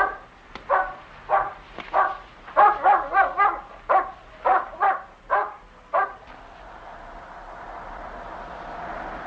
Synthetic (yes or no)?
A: no